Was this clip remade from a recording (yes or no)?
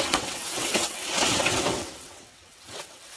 yes